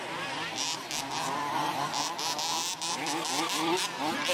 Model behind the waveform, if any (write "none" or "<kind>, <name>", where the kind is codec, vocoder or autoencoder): none